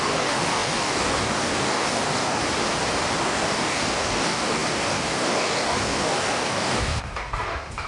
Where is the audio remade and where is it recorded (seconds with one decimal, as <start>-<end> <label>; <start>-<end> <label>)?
0.0-2.4 remade; 2.4-3.2 recorded; 3.2-7.9 remade